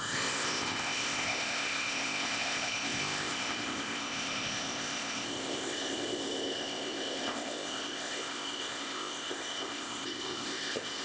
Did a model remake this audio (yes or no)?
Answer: yes